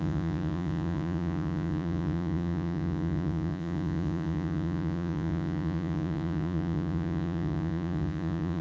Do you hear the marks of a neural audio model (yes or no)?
yes